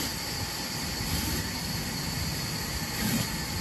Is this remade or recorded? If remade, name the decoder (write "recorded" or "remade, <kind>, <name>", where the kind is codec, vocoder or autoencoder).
recorded